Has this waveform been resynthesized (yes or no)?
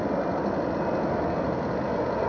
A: no